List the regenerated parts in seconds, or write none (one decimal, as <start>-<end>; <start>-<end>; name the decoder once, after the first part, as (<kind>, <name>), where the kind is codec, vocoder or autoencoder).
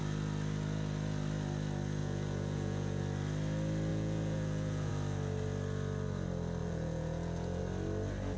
2.0-3.0 (vocoder, Vocos); 3.9-4.9; 6.6-7.6